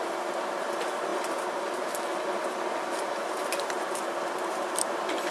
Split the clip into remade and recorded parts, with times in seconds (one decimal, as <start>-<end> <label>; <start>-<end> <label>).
0.0-5.3 recorded